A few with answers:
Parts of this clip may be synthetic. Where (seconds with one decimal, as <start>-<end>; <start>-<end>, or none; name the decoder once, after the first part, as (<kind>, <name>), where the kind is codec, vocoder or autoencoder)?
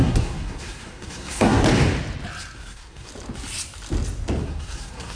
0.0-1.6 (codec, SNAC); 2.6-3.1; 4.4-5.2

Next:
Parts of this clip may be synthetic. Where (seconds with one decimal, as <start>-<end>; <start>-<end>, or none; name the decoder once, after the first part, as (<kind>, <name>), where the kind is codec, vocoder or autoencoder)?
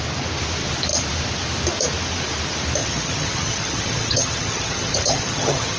2.8-5.8 (vocoder, HiFi-GAN)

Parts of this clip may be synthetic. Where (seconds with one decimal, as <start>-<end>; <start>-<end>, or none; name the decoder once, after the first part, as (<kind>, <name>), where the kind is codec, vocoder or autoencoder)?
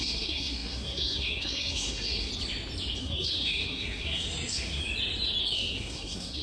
0.0-2.3 (codec, SNAC); 3.0-4.8; 5.4-6.4